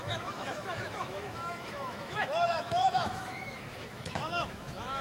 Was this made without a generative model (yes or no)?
no